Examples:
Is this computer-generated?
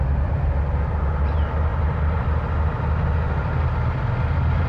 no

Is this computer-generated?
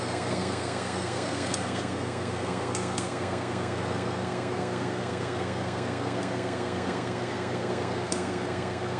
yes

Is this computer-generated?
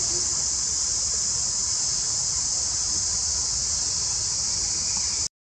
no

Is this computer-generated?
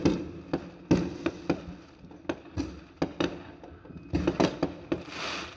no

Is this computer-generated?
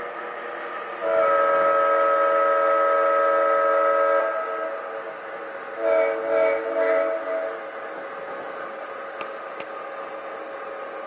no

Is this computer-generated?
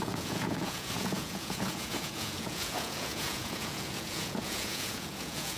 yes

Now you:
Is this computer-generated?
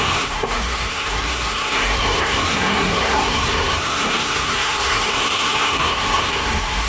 yes